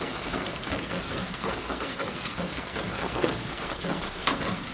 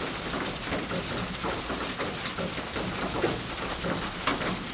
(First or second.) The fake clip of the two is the first